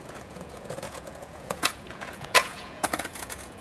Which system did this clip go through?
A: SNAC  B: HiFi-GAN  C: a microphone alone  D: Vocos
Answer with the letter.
D